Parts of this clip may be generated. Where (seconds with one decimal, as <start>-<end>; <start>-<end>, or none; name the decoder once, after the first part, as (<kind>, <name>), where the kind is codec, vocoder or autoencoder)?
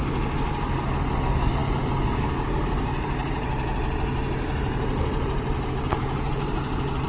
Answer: none